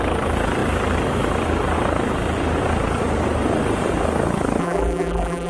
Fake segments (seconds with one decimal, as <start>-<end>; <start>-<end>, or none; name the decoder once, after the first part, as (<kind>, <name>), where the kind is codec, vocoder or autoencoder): 4.6-5.5 (vocoder, BigVGAN v2)